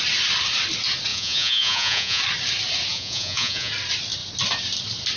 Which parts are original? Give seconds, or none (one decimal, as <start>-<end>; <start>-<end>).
0.0-1.1; 2.2-2.9; 3.7-5.2